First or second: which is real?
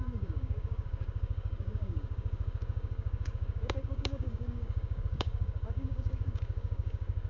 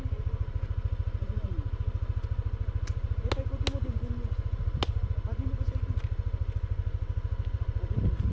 second